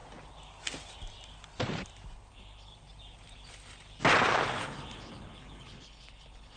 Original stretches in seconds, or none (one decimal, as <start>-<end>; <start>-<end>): 0.0-2.3; 2.7-4.6